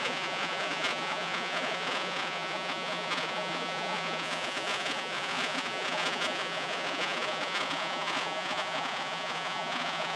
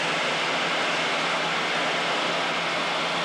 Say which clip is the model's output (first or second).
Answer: first